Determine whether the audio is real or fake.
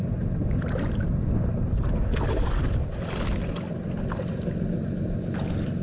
real